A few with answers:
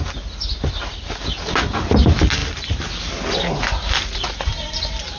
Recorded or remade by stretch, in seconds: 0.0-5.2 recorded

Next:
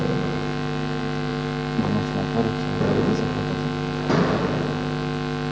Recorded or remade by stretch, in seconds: 0.0-5.5 recorded

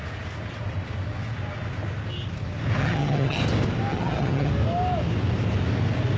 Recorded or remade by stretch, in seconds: 0.0-2.8 recorded; 2.8-3.4 remade; 3.4-3.9 recorded; 3.9-4.5 remade; 4.5-6.2 recorded

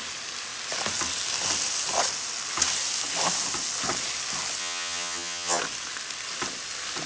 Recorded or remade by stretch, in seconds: 0.0-4.6 recorded; 4.6-5.6 remade; 5.6-7.1 recorded

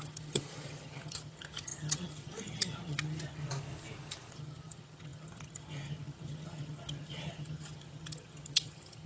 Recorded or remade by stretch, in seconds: 0.0-3.4 remade; 3.4-4.3 recorded; 4.3-9.1 remade

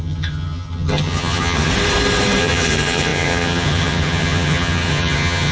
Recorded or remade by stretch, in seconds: 0.0-1.7 remade; 1.7-2.4 recorded; 2.4-5.5 remade